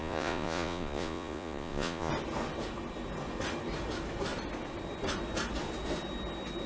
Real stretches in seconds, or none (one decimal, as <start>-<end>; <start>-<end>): 2.1-6.7